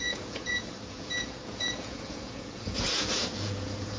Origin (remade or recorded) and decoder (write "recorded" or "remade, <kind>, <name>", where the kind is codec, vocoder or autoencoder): remade, vocoder, Vocos